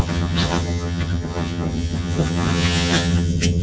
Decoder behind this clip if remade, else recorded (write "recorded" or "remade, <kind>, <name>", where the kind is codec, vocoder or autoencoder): remade, vocoder, HiFi-GAN